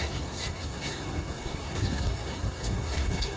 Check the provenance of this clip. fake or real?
fake